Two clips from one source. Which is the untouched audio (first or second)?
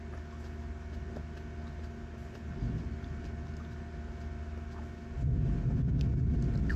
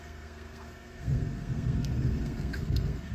first